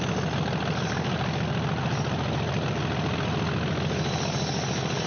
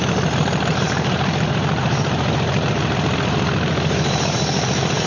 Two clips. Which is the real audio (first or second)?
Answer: first